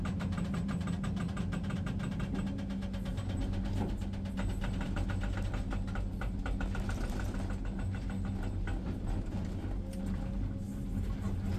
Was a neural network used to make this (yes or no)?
no